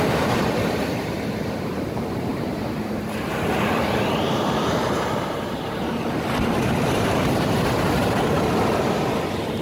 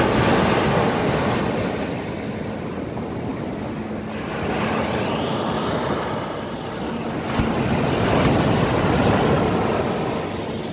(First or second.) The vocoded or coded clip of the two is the first